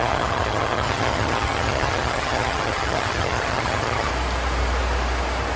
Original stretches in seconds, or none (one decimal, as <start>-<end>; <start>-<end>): 4.1-5.6